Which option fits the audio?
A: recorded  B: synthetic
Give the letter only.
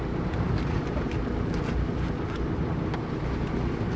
A